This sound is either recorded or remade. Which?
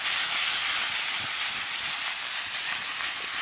recorded